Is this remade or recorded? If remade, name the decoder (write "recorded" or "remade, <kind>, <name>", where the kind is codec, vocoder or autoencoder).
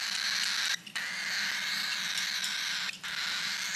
recorded